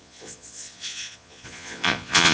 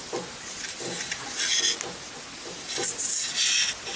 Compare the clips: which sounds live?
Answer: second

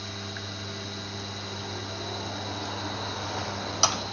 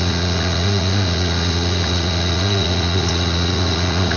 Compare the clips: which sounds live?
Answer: first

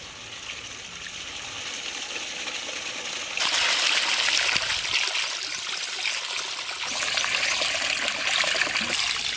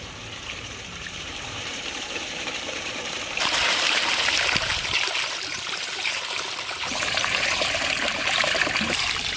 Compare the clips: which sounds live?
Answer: first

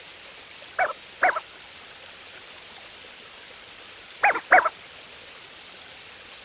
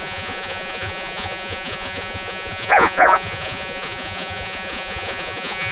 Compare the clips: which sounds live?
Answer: first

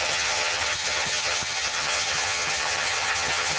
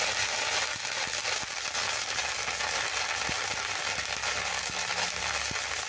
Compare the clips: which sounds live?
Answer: second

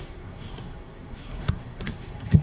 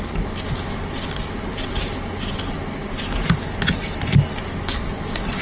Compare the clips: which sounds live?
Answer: second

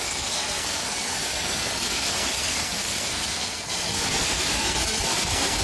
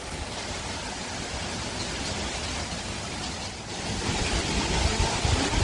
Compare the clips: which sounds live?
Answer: second